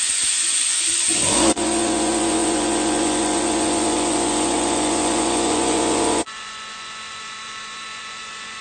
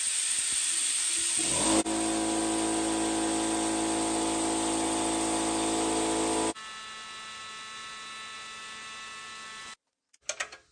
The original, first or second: second